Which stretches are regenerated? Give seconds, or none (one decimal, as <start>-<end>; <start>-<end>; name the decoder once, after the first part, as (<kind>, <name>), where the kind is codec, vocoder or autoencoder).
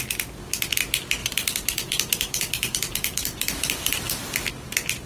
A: 1.2-4.3 (vocoder, BigVGAN v2)